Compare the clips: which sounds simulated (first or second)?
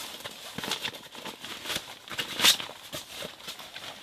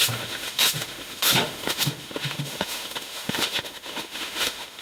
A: second